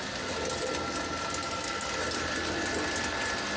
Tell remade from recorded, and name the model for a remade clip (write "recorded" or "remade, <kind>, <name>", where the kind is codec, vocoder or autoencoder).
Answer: recorded